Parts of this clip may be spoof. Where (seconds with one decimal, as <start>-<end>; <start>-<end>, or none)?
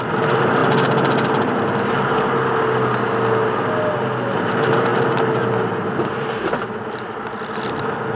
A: none